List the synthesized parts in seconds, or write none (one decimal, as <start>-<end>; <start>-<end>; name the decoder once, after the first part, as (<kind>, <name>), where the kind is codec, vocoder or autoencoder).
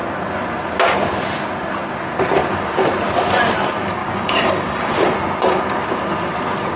4.0-4.9 (codec, DAC)